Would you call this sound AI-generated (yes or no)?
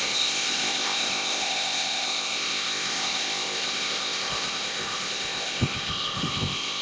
yes